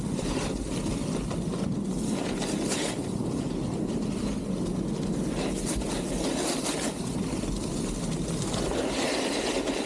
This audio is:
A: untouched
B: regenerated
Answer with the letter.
A